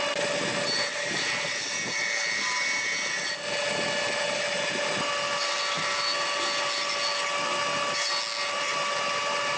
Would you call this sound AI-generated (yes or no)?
no